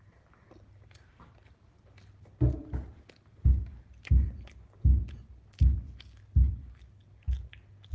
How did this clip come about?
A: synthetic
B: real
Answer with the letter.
B